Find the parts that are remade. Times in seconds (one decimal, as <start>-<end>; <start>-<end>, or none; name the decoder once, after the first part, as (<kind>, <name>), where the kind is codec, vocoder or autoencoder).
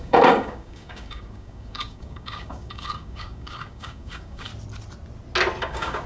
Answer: 0.0-4.5 (codec, DAC); 5.6-6.1